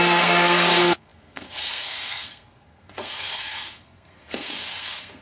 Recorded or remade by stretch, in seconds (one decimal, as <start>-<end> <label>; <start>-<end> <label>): 0.0-5.2 remade